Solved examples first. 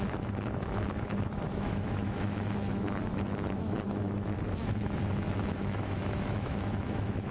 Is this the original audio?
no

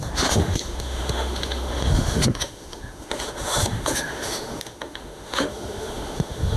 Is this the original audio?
no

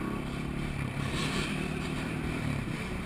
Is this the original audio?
no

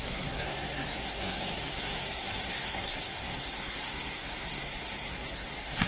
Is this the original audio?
no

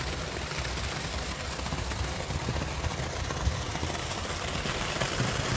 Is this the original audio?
no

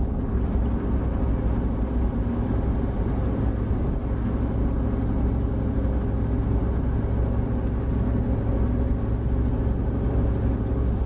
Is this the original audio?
yes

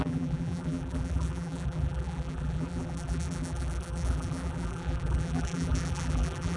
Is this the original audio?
no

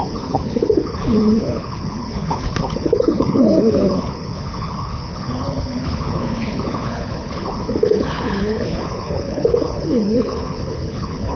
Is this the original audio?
no